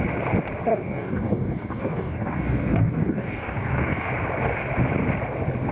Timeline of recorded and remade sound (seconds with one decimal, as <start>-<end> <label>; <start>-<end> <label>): 0.0-0.7 recorded; 0.7-4.1 remade; 4.1-5.7 recorded